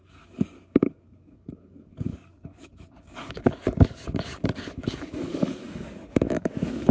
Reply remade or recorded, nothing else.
remade